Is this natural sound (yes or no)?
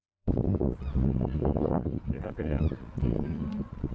no